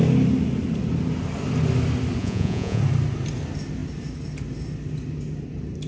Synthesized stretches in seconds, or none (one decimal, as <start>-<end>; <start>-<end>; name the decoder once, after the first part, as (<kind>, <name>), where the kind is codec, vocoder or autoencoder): 2.2-2.8 (vocoder, Vocos)